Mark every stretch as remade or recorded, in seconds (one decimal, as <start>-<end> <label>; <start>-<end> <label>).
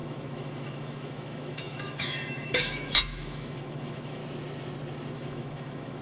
0.0-4.2 remade; 4.2-5.1 recorded; 5.1-6.0 remade